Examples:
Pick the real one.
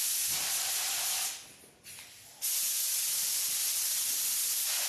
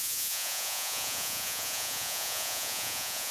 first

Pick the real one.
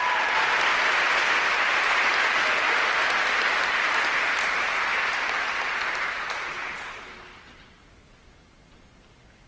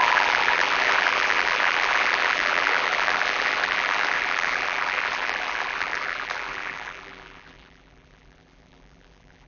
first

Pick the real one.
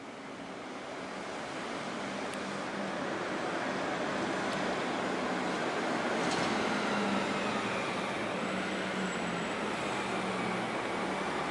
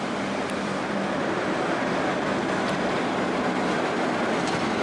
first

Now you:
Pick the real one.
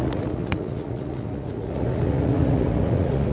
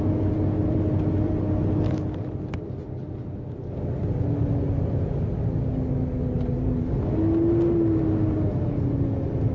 second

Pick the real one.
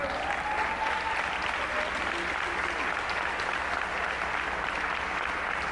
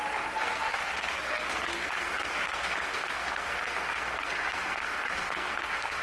first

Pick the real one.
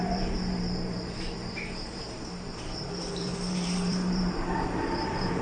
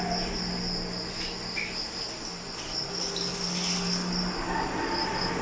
second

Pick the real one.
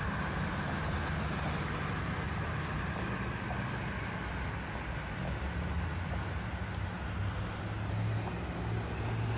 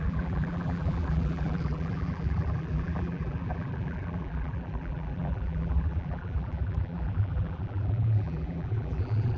first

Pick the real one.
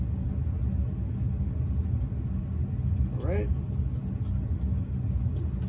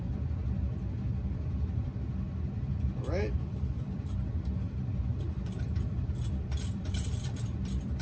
first